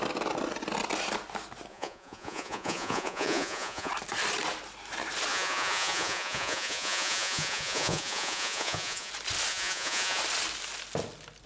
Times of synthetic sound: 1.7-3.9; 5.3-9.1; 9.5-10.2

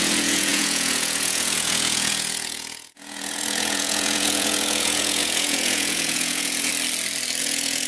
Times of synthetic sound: 0.0-6.7; 7.4-7.9